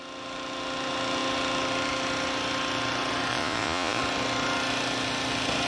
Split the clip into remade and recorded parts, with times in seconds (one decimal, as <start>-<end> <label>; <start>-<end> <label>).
0.0-3.3 recorded; 3.3-4.0 remade; 4.0-5.7 recorded